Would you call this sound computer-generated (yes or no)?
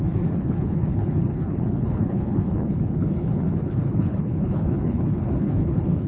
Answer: yes